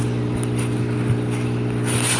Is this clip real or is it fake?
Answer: real